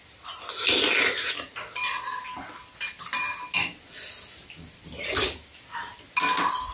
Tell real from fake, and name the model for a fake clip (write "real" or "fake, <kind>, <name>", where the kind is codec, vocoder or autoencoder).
real